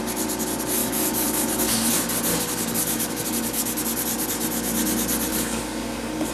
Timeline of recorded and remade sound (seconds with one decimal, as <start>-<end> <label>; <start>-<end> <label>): 0.0-0.8 recorded; 0.8-1.9 remade; 1.9-2.3 recorded; 2.3-3.8 remade; 3.8-5.3 recorded; 5.3-6.3 remade